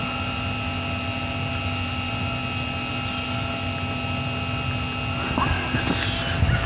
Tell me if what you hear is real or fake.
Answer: real